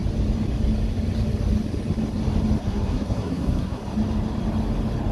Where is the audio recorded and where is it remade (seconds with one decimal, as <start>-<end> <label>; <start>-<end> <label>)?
0.0-2.6 recorded; 2.6-3.8 remade; 3.8-5.1 recorded